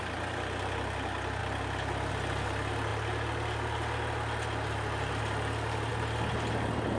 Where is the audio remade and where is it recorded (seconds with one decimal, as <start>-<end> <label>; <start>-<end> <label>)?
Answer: 0.0-7.0 recorded